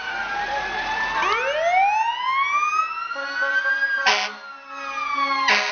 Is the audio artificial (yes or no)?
no